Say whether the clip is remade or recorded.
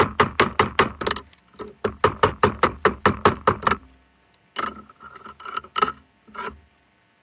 recorded